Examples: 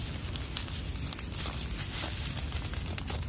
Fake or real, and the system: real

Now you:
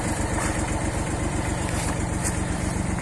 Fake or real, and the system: fake, vocoder, BigVGAN v2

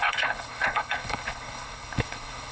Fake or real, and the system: fake, codec, HILCodec